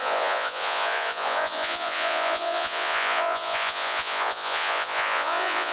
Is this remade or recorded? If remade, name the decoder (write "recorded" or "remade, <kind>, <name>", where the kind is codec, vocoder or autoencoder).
remade, vocoder, Vocos